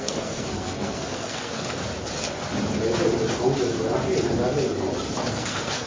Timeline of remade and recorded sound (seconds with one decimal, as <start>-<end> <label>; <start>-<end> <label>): 0.0-1.8 remade; 1.8-5.3 recorded; 5.3-5.9 remade